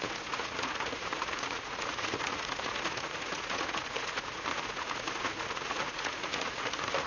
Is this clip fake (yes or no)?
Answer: yes